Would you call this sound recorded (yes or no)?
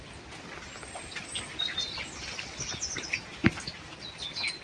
yes